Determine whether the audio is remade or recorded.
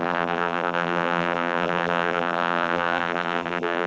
remade